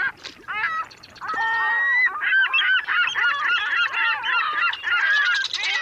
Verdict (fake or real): real